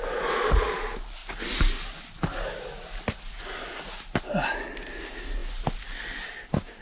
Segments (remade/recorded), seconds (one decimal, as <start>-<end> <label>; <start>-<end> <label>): 0.0-6.8 recorded